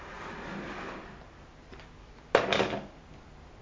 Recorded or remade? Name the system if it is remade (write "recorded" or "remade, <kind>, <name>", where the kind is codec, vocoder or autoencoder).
recorded